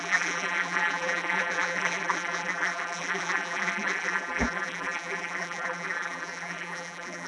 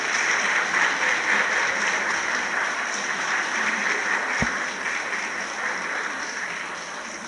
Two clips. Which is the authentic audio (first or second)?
second